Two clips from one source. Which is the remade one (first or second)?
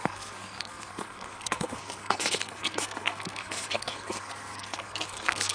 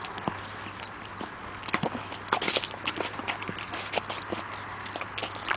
first